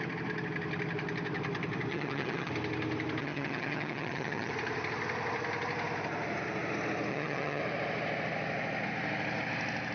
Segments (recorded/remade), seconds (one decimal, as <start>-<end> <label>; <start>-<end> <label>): 0.0-1.9 recorded; 1.9-2.5 remade; 2.5-3.2 recorded; 3.2-4.5 remade; 4.5-7.1 recorded; 7.1-7.6 remade; 7.6-9.9 recorded